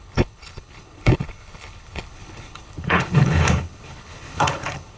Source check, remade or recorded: remade